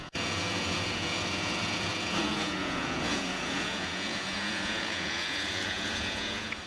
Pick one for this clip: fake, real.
fake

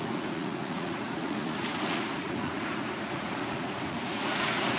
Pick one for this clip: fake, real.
fake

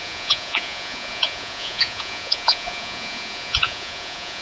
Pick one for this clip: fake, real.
fake